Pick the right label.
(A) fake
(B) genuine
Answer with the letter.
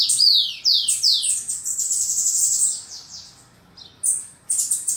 B